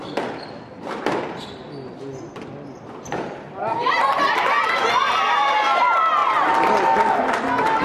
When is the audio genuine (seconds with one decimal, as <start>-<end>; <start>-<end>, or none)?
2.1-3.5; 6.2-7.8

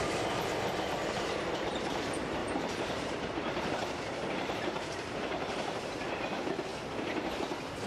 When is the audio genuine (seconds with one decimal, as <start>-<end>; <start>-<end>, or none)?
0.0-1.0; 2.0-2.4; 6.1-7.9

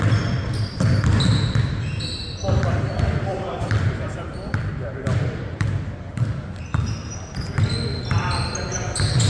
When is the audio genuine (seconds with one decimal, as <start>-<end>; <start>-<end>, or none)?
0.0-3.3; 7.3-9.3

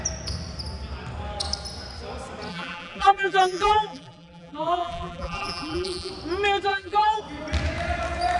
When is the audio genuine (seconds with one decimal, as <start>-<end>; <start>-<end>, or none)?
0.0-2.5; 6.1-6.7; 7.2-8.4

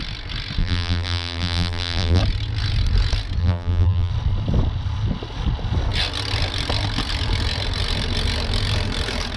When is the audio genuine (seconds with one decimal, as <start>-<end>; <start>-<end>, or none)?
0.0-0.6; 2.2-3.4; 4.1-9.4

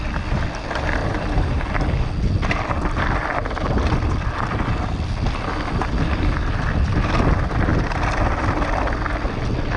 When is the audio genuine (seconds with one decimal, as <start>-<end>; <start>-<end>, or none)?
0.0-1.0; 1.7-9.8

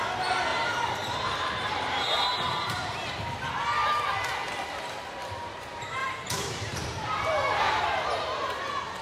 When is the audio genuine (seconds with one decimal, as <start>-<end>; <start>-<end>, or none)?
0.0-0.5; 3.2-6.0; 8.6-9.0

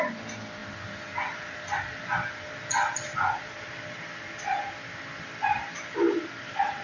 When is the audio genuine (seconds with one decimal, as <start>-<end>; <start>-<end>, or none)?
0.0-6.8